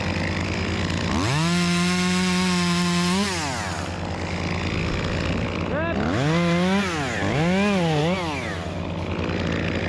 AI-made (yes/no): no